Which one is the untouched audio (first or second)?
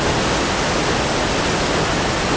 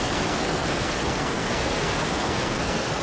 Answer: first